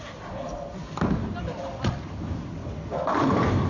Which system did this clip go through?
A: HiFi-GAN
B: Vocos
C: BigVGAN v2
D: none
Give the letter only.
D